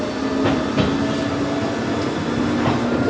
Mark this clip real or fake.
real